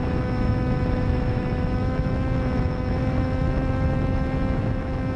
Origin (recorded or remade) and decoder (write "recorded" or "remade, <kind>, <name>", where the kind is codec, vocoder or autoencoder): remade, autoencoder, DAC-VAE